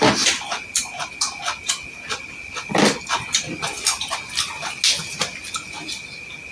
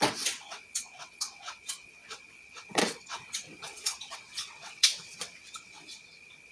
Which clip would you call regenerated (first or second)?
second